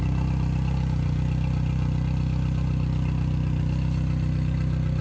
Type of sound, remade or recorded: recorded